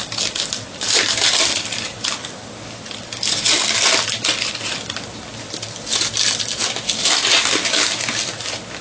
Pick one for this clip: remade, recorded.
recorded